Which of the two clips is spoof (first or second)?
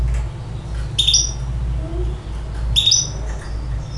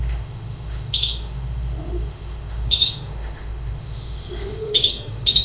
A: second